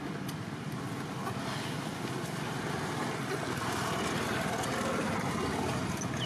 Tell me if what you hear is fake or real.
real